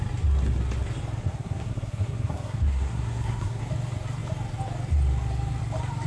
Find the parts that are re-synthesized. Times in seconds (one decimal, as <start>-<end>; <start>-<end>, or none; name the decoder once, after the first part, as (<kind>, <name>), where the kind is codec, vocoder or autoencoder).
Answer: 1.2-3.6 (codec, SNAC)